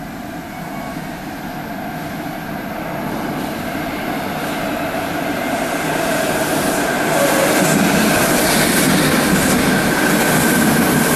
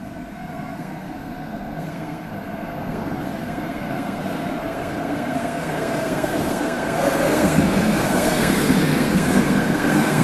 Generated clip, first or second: second